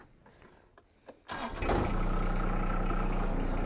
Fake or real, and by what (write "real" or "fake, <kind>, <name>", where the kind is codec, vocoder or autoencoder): real